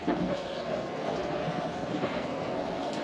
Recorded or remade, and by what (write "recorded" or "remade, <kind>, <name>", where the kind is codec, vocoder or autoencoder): remade, codec, SNAC